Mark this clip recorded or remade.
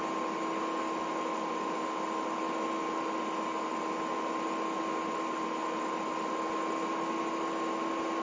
recorded